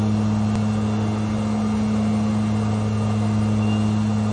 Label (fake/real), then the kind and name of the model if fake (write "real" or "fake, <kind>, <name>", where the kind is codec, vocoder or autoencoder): real